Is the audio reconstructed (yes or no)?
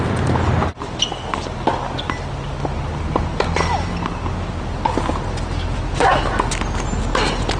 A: no